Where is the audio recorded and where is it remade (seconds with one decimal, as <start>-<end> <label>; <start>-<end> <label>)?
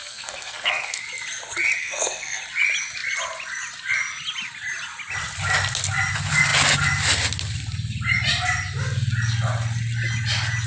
0.0-1.0 remade; 1.0-1.8 recorded; 1.8-2.4 remade; 2.4-10.7 recorded